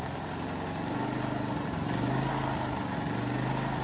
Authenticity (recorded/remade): recorded